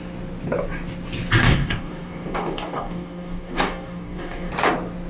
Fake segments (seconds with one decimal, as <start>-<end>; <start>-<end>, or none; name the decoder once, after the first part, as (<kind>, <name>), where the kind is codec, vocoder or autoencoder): 1.4-4.5 (codec, DAC)